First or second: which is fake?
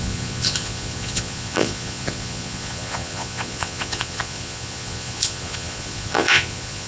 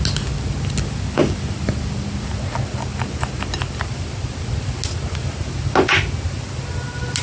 first